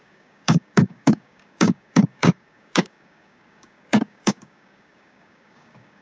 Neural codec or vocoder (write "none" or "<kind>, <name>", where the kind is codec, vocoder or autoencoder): codec, DAC